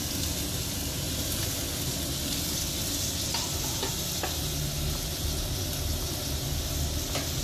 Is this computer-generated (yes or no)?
no